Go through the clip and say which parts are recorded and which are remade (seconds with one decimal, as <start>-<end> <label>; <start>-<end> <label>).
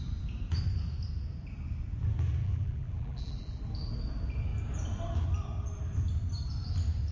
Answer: 0.0-2.4 recorded; 2.4-3.6 remade; 3.6-7.1 recorded